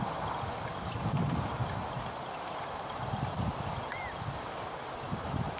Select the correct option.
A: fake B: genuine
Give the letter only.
A